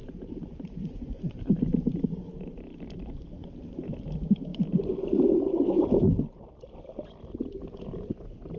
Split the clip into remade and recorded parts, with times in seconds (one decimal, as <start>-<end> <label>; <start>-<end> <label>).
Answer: 0.0-3.9 remade; 3.9-7.6 recorded; 7.6-8.1 remade; 8.1-8.6 recorded